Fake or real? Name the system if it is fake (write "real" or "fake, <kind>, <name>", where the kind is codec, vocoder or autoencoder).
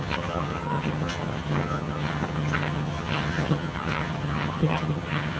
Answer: fake, vocoder, HiFi-GAN